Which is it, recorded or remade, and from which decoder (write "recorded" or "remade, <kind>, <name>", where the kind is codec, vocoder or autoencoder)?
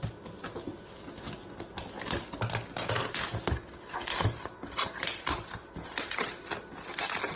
recorded